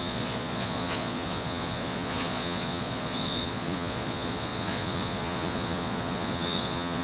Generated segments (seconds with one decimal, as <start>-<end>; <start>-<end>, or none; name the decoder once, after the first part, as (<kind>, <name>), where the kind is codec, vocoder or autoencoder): 0.0-7.0 (vocoder, Vocos)